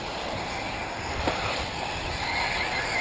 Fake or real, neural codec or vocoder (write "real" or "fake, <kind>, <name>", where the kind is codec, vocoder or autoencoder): real